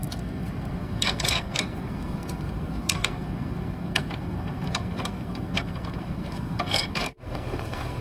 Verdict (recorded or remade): remade